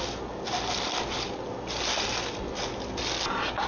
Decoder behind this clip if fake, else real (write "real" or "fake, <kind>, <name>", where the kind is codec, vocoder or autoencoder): real